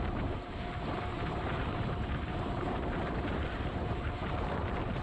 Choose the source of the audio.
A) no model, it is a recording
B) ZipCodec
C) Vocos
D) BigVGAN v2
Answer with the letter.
D